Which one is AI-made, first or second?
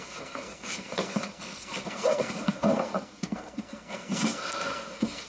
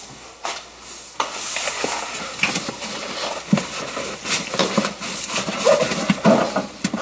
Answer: first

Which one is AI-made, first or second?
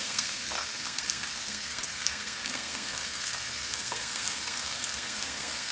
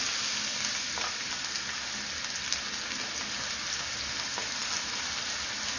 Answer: first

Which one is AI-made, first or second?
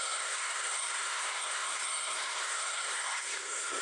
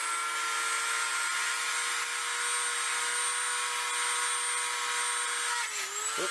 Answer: first